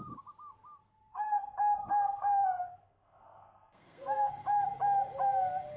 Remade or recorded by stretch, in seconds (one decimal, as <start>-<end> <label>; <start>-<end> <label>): 0.0-0.8 recorded; 0.8-4.3 remade; 4.3-5.8 recorded